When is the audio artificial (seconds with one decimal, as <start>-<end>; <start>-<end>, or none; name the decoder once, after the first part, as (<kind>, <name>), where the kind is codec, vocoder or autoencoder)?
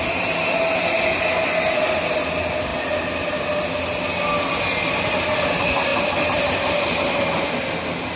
none